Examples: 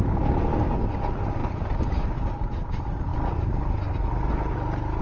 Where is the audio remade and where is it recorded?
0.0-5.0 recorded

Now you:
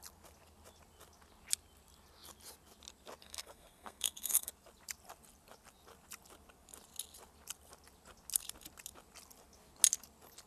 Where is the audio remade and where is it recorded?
0.0-3.2 recorded; 3.2-4.5 remade; 4.5-10.5 recorded

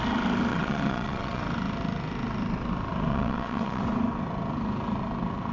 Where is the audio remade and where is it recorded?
0.0-0.5 recorded; 0.5-1.4 remade; 1.4-3.1 recorded; 3.1-3.8 remade; 3.8-5.5 recorded

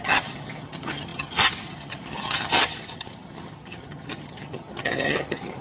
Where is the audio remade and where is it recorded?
0.0-5.6 remade

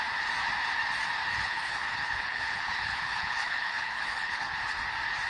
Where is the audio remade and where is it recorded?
0.0-1.3 recorded; 1.3-4.5 remade; 4.5-5.3 recorded

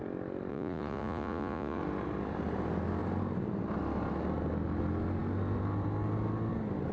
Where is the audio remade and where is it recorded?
0.0-0.5 recorded; 0.5-1.8 remade; 1.8-6.9 recorded

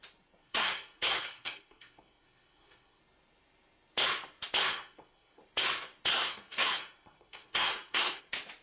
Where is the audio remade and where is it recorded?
0.0-0.4 recorded; 0.4-3.0 remade; 3.0-4.7 recorded; 4.7-5.4 remade; 5.4-6.1 recorded; 6.1-8.2 remade; 8.2-8.6 recorded

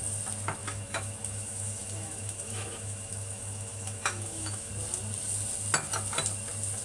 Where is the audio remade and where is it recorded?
0.0-0.6 recorded; 0.6-4.7 remade; 4.7-6.8 recorded